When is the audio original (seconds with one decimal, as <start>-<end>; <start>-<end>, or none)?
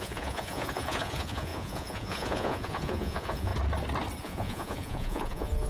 3.5-4.2